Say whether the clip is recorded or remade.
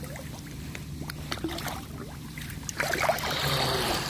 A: recorded